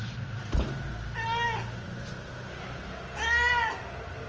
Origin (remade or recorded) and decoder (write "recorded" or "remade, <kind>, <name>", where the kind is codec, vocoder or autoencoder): recorded